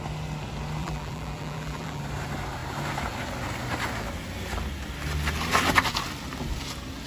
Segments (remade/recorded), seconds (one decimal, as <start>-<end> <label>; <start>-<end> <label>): 0.0-0.8 recorded; 0.8-2.0 remade; 2.0-7.1 recorded